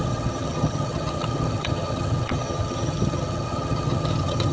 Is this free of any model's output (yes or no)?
no